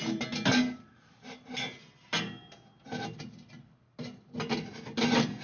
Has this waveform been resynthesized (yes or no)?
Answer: no